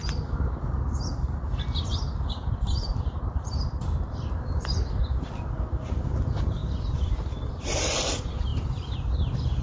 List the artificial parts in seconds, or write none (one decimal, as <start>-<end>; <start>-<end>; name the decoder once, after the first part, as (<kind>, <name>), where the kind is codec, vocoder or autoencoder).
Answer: none